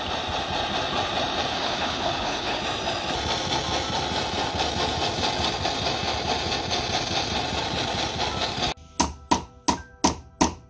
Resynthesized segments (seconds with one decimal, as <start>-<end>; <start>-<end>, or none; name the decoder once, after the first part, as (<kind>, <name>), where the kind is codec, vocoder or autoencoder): 1.5-2.6 (codec, HILCodec)